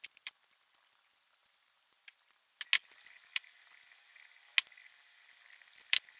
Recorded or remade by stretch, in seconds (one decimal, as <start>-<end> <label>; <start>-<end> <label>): 0.0-1.4 remade; 1.4-2.9 recorded; 2.9-4.1 remade; 4.1-4.6 recorded; 4.6-6.2 remade